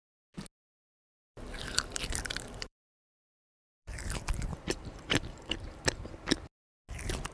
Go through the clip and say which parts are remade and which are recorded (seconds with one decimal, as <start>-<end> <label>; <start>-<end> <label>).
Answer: 0.0-1.2 recorded; 1.2-5.6 remade; 5.6-7.3 recorded